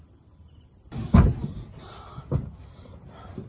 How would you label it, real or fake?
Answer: real